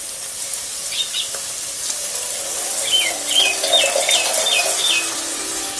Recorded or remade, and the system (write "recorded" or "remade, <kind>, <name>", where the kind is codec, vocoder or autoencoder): recorded